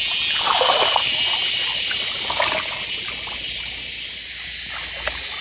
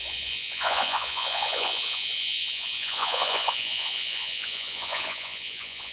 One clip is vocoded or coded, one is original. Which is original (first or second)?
first